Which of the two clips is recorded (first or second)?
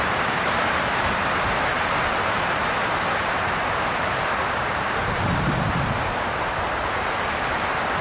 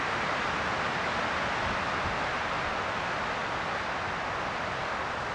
second